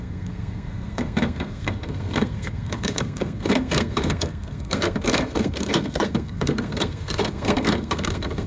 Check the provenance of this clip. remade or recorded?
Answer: remade